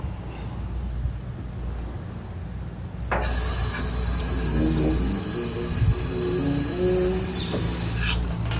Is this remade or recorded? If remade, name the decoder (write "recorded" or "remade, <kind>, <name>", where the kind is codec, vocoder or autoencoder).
recorded